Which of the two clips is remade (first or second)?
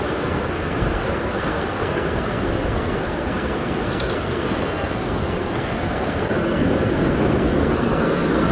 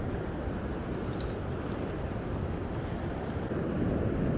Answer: first